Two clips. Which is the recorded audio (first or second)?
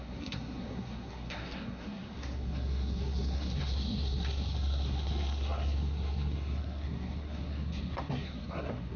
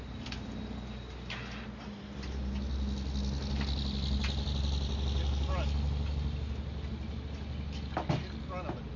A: second